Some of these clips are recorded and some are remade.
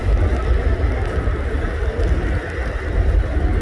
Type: recorded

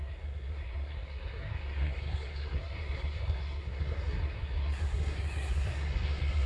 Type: remade